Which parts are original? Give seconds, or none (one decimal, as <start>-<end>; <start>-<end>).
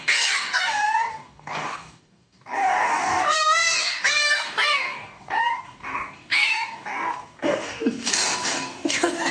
none